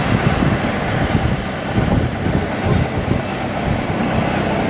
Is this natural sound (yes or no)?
yes